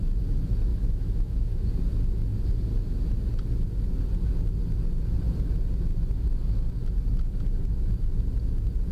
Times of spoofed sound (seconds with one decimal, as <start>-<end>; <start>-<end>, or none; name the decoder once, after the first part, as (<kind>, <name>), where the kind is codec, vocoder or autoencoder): 0.7-1.7 (autoencoder, DAC-VAE)